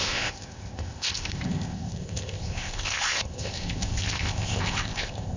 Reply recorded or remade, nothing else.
remade